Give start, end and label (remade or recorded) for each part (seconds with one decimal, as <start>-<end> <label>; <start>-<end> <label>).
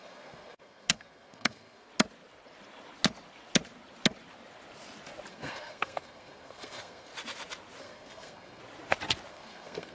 0.0-1.9 remade; 1.9-5.3 recorded; 5.3-7.1 remade; 7.1-7.8 recorded; 7.8-8.6 remade; 8.6-9.3 recorded; 9.3-9.9 remade